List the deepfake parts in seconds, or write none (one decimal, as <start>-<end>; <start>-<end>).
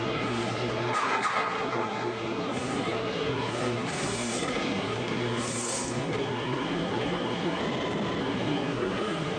0.0-7.6; 8.2-9.4